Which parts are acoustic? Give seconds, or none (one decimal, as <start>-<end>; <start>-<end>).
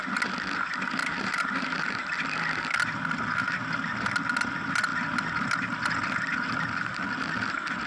0.0-1.0; 2.1-7.9